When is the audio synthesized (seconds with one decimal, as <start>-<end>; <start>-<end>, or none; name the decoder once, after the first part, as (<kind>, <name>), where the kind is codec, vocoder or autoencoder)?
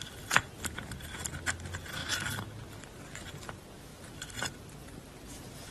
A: none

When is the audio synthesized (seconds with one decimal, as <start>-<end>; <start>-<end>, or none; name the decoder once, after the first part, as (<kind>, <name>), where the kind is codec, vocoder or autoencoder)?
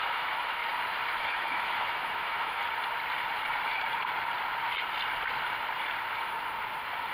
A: 0.0-0.6 (autoencoder, DAC-VAE); 1.2-2.6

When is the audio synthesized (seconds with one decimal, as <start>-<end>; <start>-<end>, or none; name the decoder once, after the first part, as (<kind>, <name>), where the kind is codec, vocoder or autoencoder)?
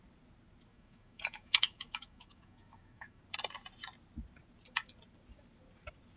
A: 0.7-3.2 (autoencoder, DAC-VAE)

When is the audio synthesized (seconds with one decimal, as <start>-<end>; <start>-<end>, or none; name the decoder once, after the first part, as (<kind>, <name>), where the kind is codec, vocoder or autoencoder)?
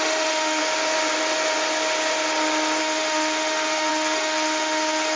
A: 0.0-0.6 (autoencoder, DAC-VAE); 2.8-5.2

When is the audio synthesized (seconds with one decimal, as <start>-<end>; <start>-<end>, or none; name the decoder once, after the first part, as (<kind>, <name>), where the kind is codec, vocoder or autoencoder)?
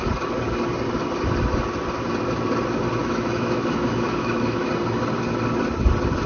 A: 3.0-4.7 (autoencoder, DAC-VAE)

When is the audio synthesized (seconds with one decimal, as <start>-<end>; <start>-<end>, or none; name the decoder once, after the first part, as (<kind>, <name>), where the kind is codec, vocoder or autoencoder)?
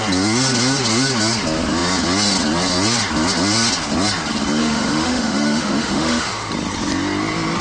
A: 4.6-6.5 (autoencoder, DAC-VAE)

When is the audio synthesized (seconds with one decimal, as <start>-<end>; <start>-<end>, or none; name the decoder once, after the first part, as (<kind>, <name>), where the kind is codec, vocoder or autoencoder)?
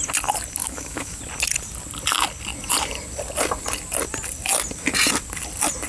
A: 0.6-1.2 (autoencoder, DAC-VAE)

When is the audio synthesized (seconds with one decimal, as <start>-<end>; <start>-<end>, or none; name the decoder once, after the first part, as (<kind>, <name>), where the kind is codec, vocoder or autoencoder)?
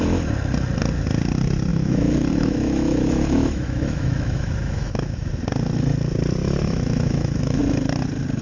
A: 1.7-5.3 (autoencoder, DAC-VAE); 6.4-7.6